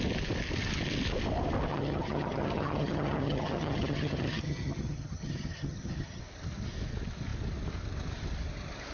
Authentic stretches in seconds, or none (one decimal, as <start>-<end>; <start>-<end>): 0.0-1.7; 6.2-8.9